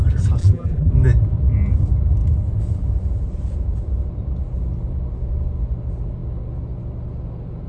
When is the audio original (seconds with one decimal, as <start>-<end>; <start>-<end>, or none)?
0.0-0.4; 0.9-7.7